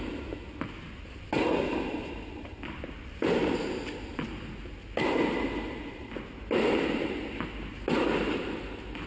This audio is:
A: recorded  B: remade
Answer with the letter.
A